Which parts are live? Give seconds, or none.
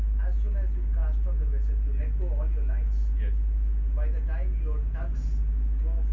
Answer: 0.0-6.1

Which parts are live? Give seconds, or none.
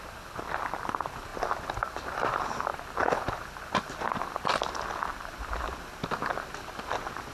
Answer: 0.0-7.3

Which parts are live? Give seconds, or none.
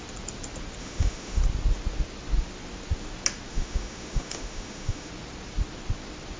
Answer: 0.0-0.8; 1.4-3.5; 5.1-6.4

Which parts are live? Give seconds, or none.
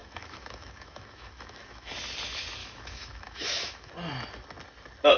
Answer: 1.9-2.6; 3.9-5.2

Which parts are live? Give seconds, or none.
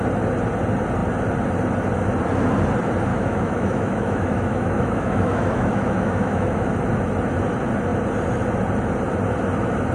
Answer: 0.0-3.1; 6.7-9.9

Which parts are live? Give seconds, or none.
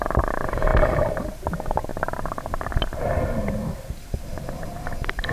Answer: 0.0-5.3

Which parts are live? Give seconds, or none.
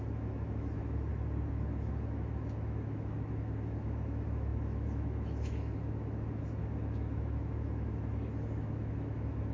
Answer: 1.1-1.9